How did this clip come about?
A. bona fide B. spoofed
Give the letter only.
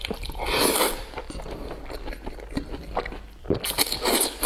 A